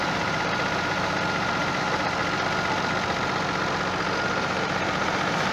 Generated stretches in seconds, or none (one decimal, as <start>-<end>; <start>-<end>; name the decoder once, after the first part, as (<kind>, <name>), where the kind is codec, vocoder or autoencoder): 0.0-2.2 (vocoder, BigVGAN v2); 4.3-5.5